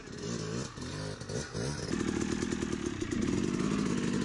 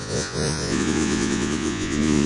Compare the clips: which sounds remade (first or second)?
second